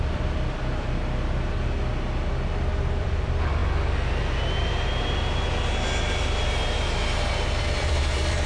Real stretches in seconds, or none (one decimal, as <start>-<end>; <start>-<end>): 1.9-3.0; 3.6-6.0